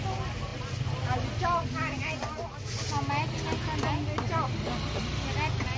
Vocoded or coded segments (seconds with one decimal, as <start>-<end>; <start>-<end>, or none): none